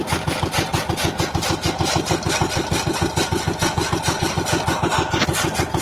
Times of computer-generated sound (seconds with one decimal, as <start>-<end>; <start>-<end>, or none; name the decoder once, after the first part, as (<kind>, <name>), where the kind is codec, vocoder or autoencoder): none